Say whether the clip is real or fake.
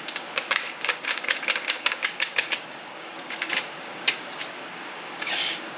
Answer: fake